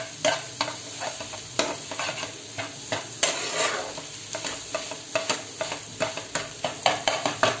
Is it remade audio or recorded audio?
recorded